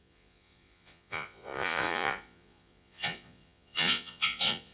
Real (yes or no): no